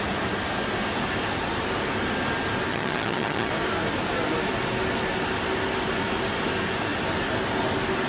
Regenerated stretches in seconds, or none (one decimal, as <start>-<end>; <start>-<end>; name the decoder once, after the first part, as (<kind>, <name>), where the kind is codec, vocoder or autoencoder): 2.7-3.5 (vocoder, HiFi-GAN)